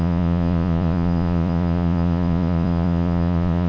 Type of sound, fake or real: fake